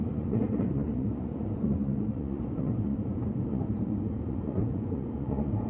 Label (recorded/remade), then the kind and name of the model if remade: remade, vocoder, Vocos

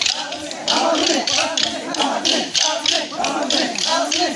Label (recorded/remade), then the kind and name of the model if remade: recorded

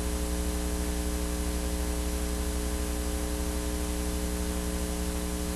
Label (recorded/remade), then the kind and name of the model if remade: recorded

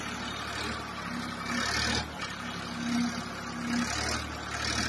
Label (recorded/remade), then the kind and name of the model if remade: recorded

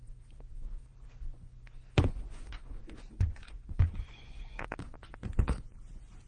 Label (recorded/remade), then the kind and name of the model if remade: remade, vocoder, Vocos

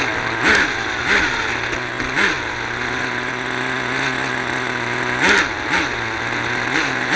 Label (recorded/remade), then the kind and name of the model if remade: recorded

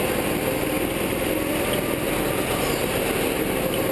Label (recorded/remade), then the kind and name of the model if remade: recorded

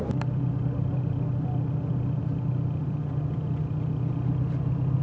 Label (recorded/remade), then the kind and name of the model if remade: recorded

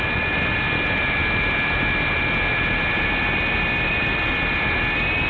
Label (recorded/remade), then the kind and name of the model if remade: recorded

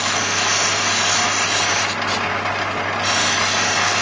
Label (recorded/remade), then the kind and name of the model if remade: recorded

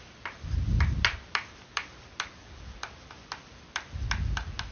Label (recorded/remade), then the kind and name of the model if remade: recorded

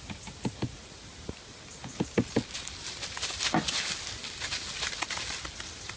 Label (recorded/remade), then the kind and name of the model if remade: recorded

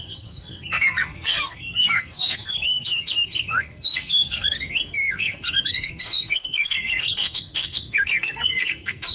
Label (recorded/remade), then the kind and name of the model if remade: remade, codec, SNAC